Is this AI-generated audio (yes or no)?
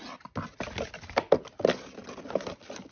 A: no